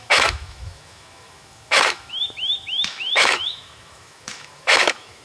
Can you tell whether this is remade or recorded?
remade